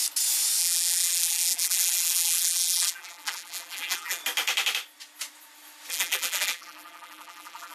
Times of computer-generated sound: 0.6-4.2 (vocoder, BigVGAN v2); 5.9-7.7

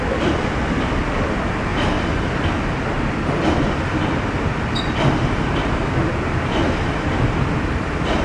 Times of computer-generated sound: 0.0-8.2 (vocoder, BigVGAN v2)

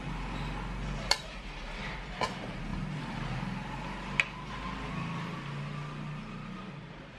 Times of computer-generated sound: none

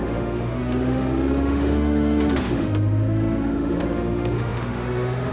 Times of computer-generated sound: 0.0-5.3 (autoencoder, DAC-VAE)

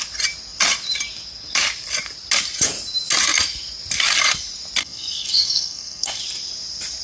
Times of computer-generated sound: 4.8-6.2 (codec, SNAC)

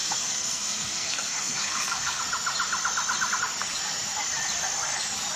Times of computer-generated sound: 0.0-2.2 (codec, SNAC)

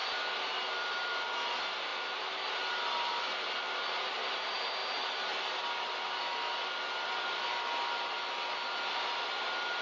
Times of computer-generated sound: none